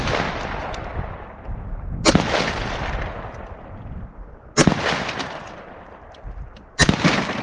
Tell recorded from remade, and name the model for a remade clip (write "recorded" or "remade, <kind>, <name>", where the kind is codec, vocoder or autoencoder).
recorded